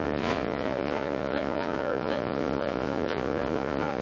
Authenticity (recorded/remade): remade